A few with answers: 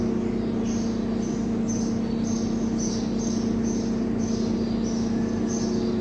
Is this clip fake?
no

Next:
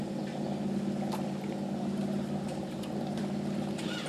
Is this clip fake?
no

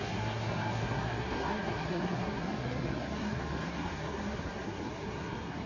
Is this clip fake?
yes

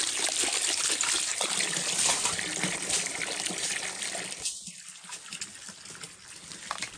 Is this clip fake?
no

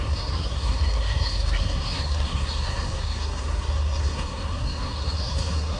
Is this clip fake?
yes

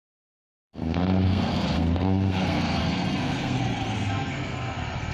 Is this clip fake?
yes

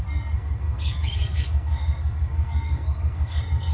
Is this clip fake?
yes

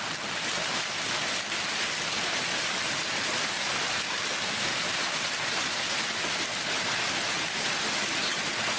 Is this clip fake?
no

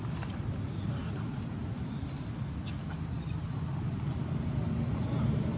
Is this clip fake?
no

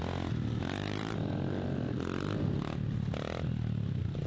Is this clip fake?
no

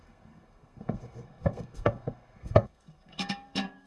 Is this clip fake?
yes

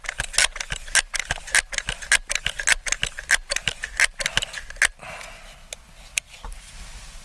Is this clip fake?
no